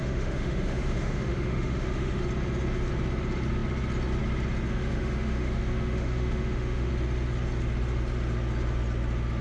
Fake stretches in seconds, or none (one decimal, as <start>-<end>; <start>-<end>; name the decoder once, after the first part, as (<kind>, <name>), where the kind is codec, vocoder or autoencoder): 0.0-2.2 (autoencoder, DAC-VAE); 4.7-6.9